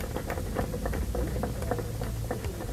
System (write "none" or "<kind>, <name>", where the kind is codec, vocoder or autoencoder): none